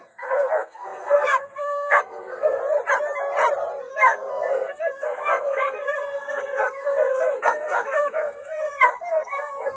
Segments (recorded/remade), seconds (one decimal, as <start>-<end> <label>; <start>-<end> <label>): 0.0-2.6 remade; 2.6-3.8 recorded; 3.8-9.8 remade